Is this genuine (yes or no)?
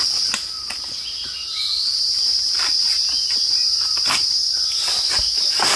yes